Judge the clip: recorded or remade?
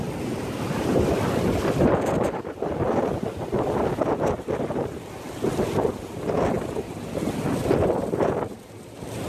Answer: recorded